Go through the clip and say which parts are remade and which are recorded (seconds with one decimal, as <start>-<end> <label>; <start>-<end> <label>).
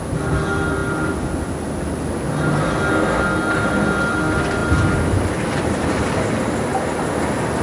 0.0-7.6 recorded